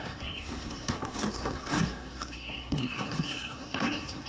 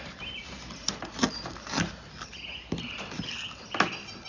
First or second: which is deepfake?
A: first